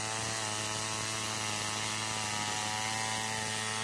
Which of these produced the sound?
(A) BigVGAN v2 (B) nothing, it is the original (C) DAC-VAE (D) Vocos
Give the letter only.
B